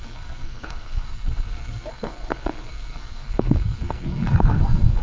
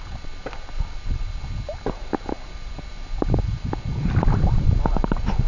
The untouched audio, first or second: second